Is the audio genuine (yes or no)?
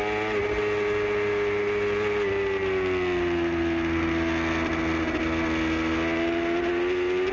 yes